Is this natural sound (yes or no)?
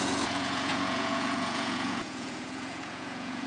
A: no